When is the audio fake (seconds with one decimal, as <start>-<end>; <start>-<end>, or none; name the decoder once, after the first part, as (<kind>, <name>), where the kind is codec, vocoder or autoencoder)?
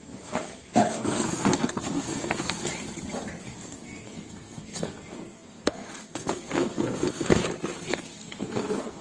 0.0-2.7 (codec, SNAC); 3.4-7.4; 7.9-9.0